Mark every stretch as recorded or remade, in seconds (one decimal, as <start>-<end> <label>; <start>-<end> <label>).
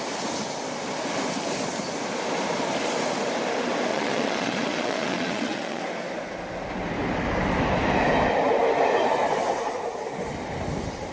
0.0-3.9 recorded; 3.9-5.8 remade; 5.8-11.1 recorded